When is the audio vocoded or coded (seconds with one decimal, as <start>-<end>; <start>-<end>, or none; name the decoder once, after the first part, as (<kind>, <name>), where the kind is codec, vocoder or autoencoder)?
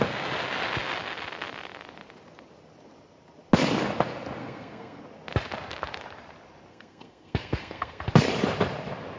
4.4-5.0 (codec, SNAC); 6.7-8.1